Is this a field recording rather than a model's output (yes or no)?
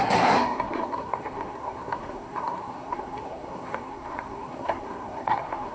no